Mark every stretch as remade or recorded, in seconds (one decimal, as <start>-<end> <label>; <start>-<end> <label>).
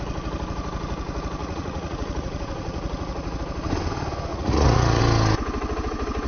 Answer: 0.0-1.4 recorded; 1.4-3.4 remade; 3.4-4.3 recorded; 4.3-5.0 remade; 5.0-6.3 recorded